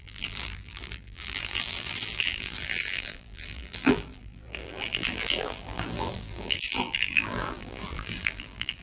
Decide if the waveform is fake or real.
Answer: fake